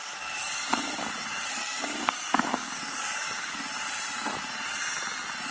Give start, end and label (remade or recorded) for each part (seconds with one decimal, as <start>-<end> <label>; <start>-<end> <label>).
0.0-1.0 remade; 1.0-1.5 recorded; 1.5-3.6 remade; 3.6-5.5 recorded